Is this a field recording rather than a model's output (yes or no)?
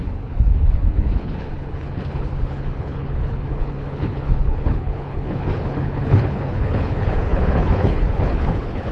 no